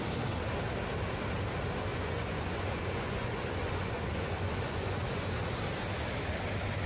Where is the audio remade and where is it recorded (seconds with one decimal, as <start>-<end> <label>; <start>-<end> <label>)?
0.0-1.9 recorded; 1.9-5.3 remade; 5.3-6.9 recorded